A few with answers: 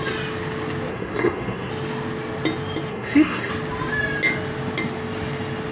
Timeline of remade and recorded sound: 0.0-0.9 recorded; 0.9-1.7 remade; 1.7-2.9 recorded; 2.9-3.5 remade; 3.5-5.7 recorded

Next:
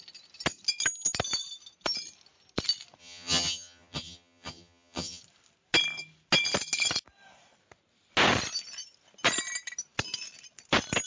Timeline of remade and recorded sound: 0.0-3.0 recorded; 3.0-5.2 remade; 5.2-11.1 recorded

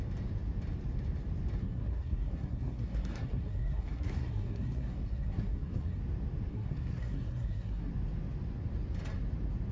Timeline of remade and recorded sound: 0.0-1.6 recorded; 1.6-6.0 remade; 6.0-6.5 recorded; 6.5-7.9 remade; 7.9-9.7 recorded